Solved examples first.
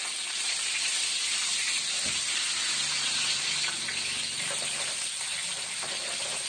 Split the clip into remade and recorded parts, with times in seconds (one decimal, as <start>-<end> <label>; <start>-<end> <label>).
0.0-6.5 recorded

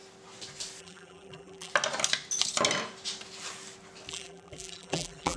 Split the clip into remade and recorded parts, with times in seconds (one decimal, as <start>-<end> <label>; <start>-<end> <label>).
0.0-0.8 recorded; 0.8-1.7 remade; 1.7-4.1 recorded; 4.1-5.4 remade

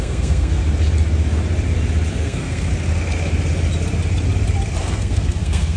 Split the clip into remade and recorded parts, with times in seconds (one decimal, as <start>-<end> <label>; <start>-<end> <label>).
0.0-0.6 remade; 0.6-2.1 recorded; 2.1-2.7 remade; 2.7-4.8 recorded; 4.8-5.8 remade

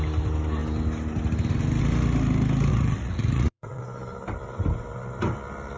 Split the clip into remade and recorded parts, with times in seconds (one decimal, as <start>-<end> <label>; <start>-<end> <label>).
0.0-2.7 recorded; 2.7-3.8 remade; 3.8-5.8 recorded

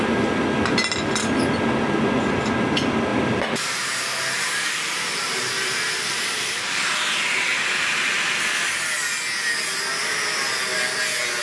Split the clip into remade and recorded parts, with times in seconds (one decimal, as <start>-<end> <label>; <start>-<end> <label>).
0.0-3.1 recorded; 3.1-6.9 remade; 6.9-11.4 recorded

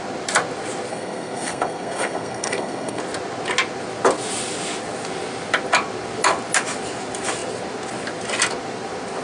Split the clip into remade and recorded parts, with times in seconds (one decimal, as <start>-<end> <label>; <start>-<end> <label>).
0.0-0.9 recorded; 0.9-3.0 remade; 3.0-9.2 recorded

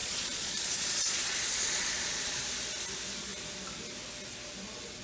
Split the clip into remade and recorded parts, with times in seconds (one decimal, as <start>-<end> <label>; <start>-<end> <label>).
0.0-2.4 remade; 2.4-5.0 recorded